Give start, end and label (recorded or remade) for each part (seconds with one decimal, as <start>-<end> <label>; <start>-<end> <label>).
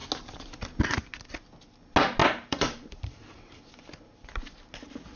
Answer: 0.0-2.2 recorded; 2.2-3.9 remade; 3.9-5.2 recorded